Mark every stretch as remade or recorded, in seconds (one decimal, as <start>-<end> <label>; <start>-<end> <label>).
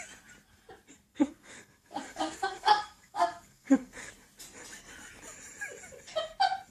0.0-1.1 recorded; 1.1-4.1 remade; 4.1-6.7 recorded